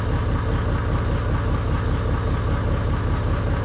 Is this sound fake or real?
real